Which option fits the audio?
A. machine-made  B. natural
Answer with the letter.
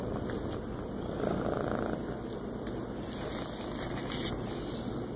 B